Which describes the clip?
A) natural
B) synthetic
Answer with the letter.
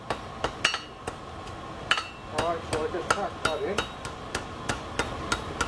A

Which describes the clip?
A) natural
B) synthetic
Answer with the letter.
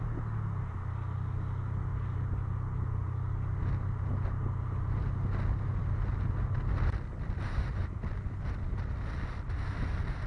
A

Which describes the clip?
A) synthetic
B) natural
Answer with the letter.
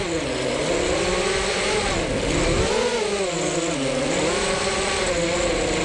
B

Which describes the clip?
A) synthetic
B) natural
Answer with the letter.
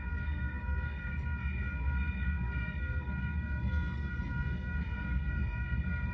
A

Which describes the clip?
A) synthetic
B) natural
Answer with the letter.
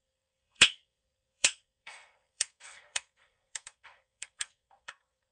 A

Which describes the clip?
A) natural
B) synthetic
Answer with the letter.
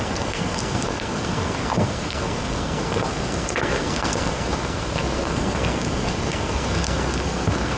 B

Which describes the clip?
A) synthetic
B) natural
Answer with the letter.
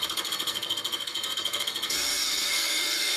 A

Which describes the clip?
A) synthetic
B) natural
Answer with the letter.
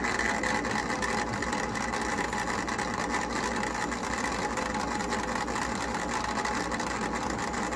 B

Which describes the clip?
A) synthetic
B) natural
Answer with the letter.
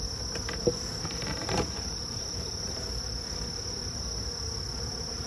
B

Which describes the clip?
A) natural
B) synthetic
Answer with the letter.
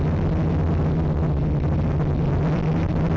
A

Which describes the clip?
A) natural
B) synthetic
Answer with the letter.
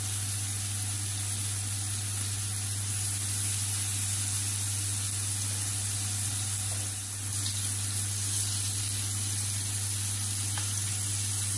A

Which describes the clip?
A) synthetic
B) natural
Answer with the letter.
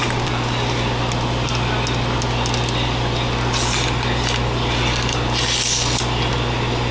B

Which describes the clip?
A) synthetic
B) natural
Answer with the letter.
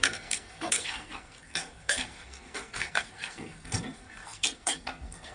A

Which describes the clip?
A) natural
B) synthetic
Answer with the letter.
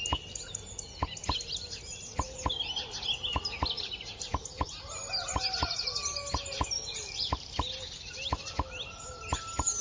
A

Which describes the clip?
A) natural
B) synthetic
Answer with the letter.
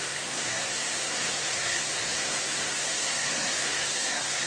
B